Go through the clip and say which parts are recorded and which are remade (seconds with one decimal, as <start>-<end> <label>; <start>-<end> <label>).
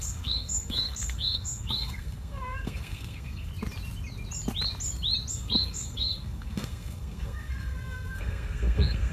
0.0-3.5 remade; 3.5-5.3 recorded; 5.3-9.1 remade